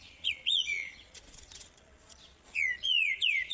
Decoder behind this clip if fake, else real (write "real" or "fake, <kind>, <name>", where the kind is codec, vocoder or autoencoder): fake, vocoder, Vocos